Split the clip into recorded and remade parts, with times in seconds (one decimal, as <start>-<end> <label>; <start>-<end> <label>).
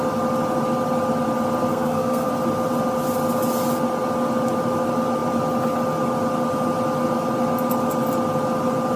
0.0-1.7 recorded; 1.7-2.3 remade; 2.3-9.0 recorded